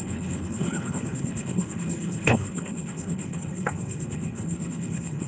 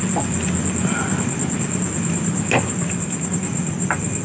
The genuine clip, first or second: second